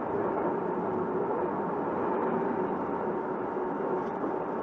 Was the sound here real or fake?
real